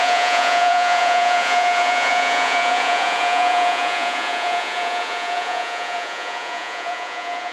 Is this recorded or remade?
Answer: remade